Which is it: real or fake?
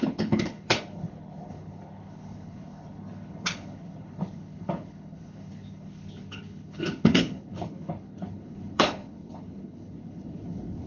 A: fake